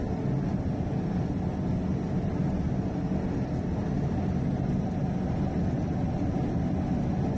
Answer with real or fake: real